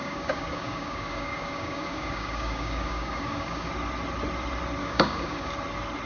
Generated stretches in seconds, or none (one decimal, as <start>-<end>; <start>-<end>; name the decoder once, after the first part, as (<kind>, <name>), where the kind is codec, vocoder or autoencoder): 0.0-3.7 (codec, DAC); 4.8-5.5